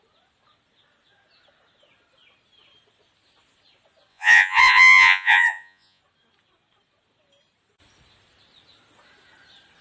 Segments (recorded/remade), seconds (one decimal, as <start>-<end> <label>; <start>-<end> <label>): 0.0-4.1 recorded; 4.1-6.0 remade; 6.0-9.8 recorded